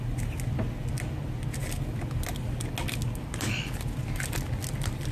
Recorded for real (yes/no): yes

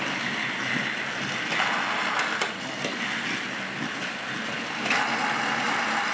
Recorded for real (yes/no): yes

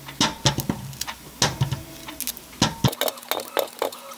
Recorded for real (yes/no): yes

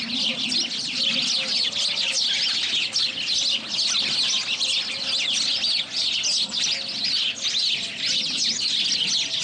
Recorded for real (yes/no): yes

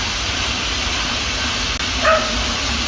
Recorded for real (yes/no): yes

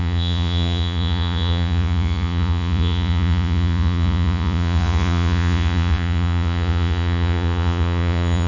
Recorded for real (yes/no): no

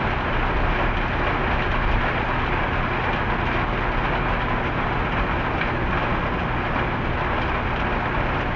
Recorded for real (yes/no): yes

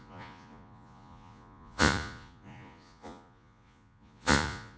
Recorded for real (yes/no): no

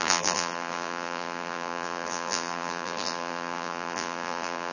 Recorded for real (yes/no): no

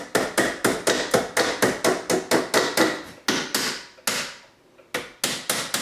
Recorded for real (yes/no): yes